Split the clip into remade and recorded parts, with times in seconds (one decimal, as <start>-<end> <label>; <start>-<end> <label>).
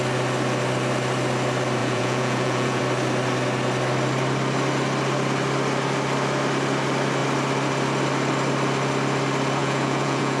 0.0-1.8 recorded; 1.8-2.8 remade; 2.8-9.6 recorded; 9.6-10.4 remade